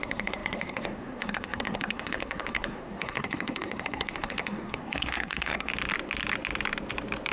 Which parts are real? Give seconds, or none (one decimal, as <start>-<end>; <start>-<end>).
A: 5.7-7.3

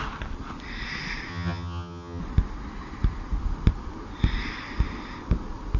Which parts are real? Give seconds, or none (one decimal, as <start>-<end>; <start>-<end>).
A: 0.0-1.3; 2.2-5.8

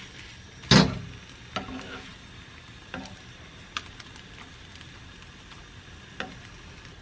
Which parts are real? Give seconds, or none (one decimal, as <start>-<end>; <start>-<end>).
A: 0.0-7.0

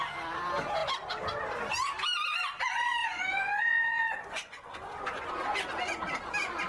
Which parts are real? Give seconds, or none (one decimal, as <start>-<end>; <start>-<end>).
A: 0.0-3.0; 5.3-6.7